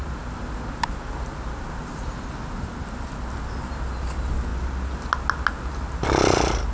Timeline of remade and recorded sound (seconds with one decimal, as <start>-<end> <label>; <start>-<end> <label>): 0.0-6.7 recorded